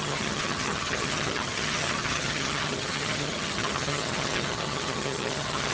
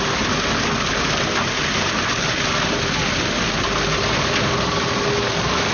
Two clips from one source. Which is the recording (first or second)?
second